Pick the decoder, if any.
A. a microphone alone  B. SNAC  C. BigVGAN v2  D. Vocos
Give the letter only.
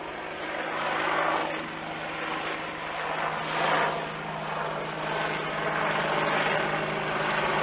A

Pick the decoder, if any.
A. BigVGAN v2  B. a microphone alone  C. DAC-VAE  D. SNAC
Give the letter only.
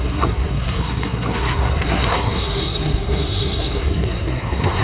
D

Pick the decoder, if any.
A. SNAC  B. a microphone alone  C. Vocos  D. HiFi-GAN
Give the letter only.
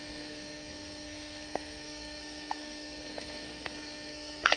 A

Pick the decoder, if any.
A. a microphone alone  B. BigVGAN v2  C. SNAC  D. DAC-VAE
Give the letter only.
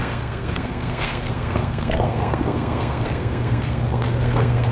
C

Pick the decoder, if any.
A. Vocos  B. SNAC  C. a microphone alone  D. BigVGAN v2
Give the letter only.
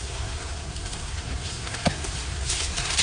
B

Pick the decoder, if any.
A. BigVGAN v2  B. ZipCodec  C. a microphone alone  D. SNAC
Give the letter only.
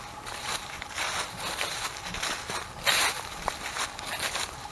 C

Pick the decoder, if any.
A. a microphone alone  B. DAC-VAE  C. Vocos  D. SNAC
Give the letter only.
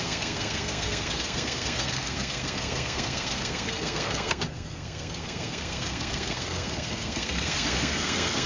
D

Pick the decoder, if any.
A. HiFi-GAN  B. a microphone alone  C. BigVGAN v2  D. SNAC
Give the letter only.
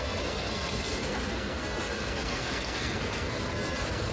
D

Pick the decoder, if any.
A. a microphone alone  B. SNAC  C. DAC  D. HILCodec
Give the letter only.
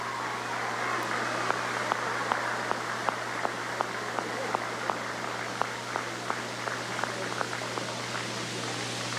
A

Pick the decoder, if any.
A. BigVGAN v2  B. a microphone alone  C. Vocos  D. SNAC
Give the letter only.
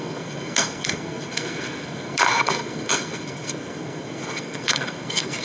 D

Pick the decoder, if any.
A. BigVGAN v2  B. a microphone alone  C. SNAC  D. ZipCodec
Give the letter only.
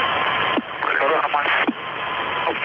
B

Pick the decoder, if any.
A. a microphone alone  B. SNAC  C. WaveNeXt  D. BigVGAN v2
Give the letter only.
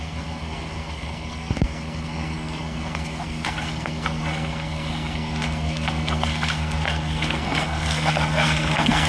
B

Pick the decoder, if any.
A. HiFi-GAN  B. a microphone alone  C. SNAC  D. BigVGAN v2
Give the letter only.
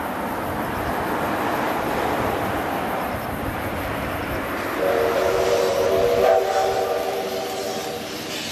B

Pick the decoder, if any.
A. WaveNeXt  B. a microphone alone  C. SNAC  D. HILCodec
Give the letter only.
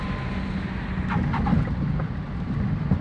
B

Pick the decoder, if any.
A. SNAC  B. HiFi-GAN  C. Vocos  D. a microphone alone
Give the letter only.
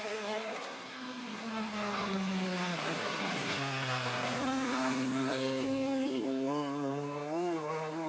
A